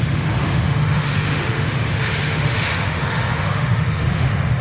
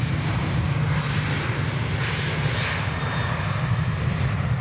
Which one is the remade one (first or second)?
first